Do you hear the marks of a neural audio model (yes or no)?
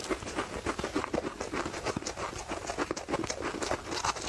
no